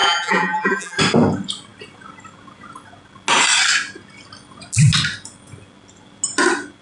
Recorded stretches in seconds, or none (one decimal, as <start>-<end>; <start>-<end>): 1.0-6.8